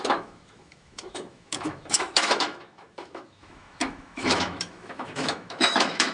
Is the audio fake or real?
fake